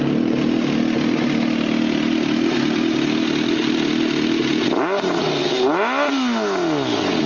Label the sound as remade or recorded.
recorded